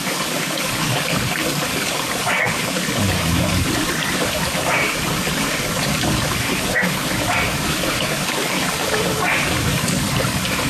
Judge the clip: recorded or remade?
remade